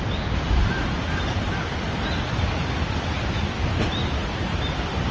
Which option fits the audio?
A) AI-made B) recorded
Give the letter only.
B